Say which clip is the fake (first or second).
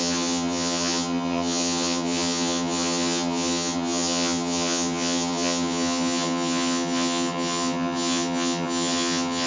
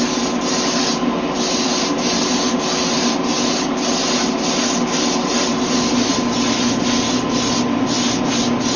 first